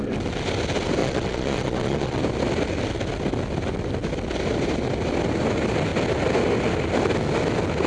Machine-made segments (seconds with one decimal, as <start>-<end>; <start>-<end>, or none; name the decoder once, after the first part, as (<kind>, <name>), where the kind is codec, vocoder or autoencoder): 1.0-2.2 (vocoder, Vocos)